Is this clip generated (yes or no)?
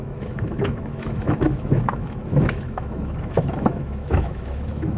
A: yes